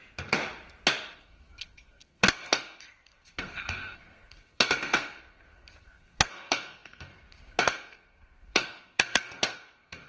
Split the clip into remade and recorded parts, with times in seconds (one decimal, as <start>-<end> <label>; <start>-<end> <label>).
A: 0.0-1.2 recorded; 1.2-10.1 remade